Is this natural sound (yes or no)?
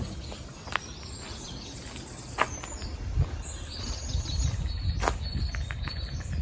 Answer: yes